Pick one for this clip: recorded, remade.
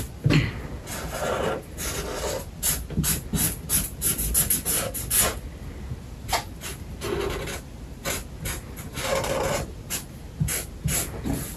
recorded